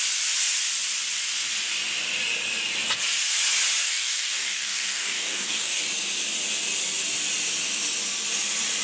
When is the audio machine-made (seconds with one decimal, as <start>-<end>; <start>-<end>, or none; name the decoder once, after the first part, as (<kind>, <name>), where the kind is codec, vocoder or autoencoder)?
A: 3.8-5.8 (codec, DAC)